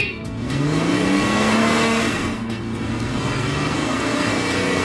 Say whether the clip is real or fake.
fake